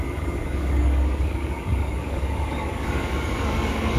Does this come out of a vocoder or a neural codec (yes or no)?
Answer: yes